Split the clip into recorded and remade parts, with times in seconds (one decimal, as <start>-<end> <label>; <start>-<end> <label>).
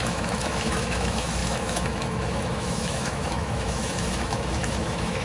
0.0-5.2 remade